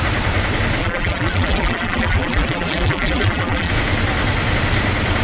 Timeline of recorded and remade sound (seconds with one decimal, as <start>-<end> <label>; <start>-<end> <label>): 0.0-0.8 recorded; 0.8-3.7 remade; 3.7-5.2 recorded